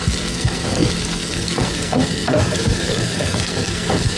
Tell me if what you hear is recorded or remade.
remade